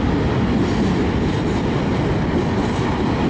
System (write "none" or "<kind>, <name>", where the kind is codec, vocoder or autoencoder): none